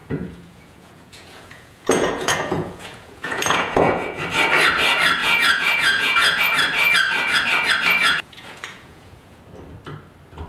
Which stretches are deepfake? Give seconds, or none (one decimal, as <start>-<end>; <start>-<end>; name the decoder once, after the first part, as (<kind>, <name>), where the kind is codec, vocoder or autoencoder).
0.0-4.2 (vocoder, Vocos); 5.2-6.4; 8.0-9.4